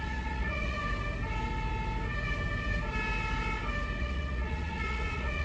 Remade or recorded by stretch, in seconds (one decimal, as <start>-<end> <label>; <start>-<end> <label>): 0.0-0.8 remade; 0.8-4.0 recorded; 4.0-5.4 remade